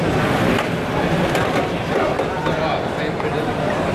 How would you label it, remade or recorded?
remade